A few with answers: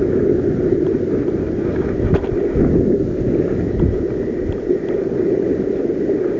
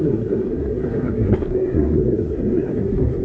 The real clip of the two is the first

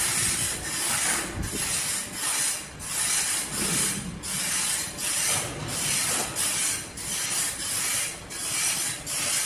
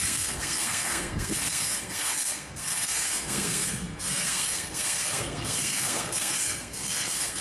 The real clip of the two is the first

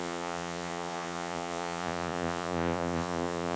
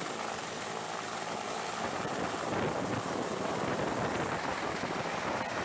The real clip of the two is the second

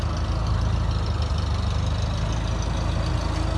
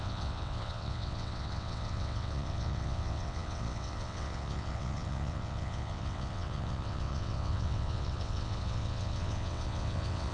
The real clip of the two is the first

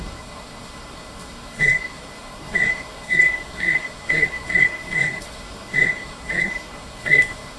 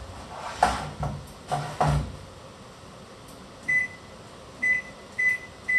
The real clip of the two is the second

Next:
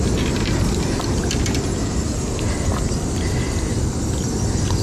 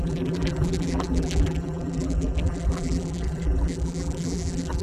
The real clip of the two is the first